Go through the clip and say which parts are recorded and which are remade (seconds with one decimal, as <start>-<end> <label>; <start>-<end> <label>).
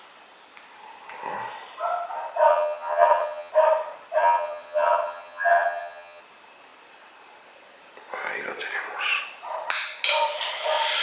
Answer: 0.0-2.5 recorded; 2.5-3.5 remade; 3.5-4.2 recorded; 4.2-6.2 remade; 6.2-11.0 recorded